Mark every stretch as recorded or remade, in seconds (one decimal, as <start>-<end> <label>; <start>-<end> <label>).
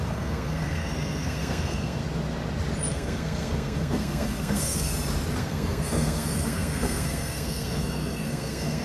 0.0-2.0 remade; 2.0-2.9 recorded; 2.9-4.9 remade; 4.9-5.4 recorded; 5.4-8.8 remade